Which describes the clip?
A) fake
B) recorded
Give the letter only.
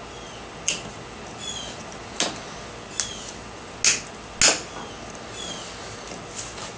B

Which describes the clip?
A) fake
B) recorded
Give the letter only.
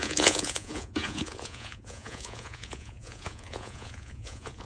A